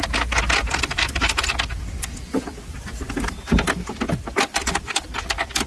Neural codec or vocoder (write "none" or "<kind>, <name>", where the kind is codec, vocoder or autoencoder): none